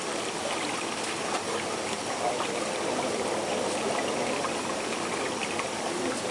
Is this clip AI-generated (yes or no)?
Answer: no